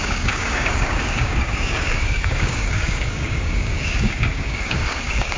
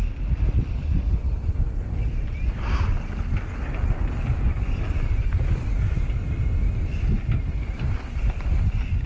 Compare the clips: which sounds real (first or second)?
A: second